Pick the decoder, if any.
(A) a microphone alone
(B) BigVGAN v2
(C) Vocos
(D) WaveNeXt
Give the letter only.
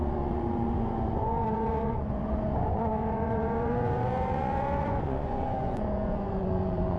C